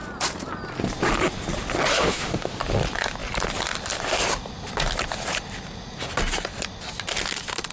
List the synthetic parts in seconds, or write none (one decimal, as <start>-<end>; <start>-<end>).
1.9-2.6